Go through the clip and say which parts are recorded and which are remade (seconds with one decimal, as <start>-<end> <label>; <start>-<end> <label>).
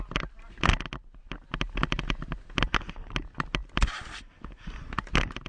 0.0-5.5 recorded